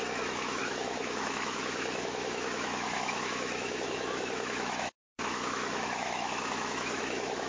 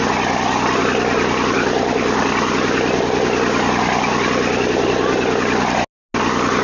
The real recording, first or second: second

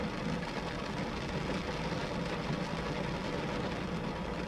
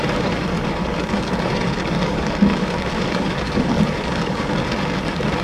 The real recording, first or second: first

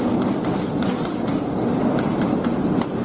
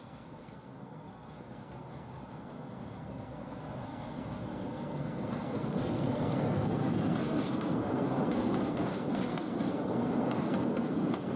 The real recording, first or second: first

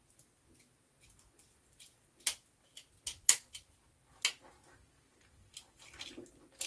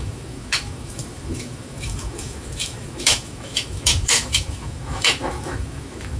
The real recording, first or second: first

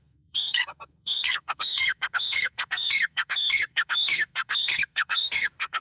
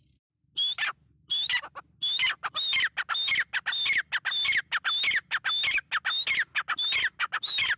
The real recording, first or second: second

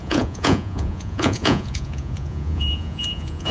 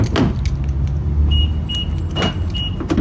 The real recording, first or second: second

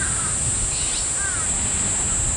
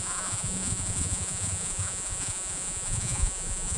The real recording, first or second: first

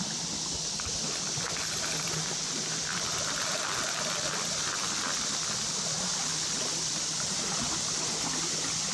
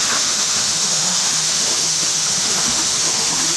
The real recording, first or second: first